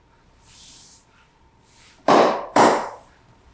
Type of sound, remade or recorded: remade